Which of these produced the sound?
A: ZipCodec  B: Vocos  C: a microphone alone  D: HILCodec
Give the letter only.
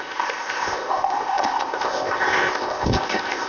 A